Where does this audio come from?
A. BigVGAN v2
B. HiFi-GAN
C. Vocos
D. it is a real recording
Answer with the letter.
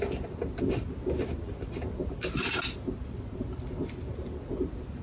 D